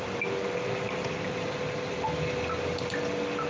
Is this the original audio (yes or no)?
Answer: yes